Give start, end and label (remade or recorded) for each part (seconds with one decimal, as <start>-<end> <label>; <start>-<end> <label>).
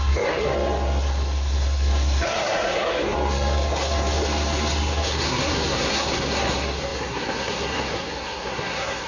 0.0-9.1 remade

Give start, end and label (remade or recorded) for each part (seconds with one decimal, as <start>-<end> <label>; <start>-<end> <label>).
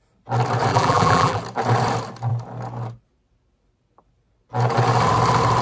0.0-0.7 recorded; 0.7-1.4 remade; 1.4-5.6 recorded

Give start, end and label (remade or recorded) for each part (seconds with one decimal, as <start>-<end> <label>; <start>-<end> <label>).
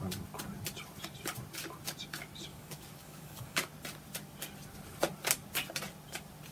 0.0-2.5 recorded; 2.5-3.6 remade; 3.6-6.5 recorded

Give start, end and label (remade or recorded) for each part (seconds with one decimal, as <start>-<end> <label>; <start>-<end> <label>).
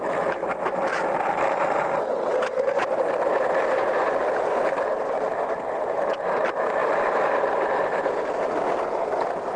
0.0-6.8 recorded; 6.8-7.3 remade; 7.3-9.6 recorded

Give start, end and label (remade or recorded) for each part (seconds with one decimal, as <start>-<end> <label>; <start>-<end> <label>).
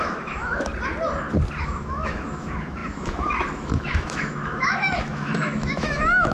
0.0-0.7 remade; 0.7-1.6 recorded; 1.6-6.3 remade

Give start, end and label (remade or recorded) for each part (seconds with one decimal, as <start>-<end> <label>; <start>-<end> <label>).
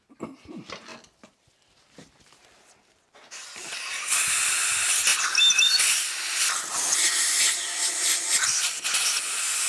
0.0-9.7 recorded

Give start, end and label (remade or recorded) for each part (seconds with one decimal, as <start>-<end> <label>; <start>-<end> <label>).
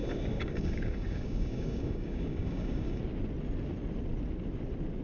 0.0-3.0 remade; 3.0-5.0 recorded